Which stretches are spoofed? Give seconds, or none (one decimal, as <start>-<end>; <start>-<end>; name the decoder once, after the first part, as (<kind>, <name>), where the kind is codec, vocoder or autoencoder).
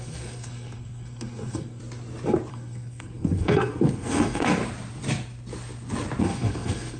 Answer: 0.0-1.8 (codec, SNAC); 2.5-4.6; 6.2-7.0